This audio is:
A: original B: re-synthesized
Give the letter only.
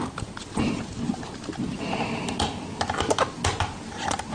A